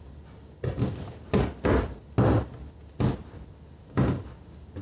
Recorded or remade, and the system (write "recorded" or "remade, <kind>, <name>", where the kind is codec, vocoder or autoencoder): recorded